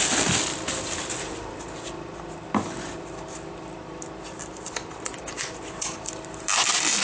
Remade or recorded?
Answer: recorded